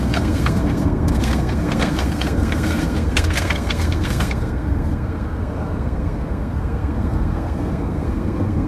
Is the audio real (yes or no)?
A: no